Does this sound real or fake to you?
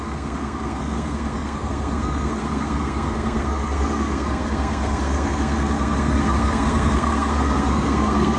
fake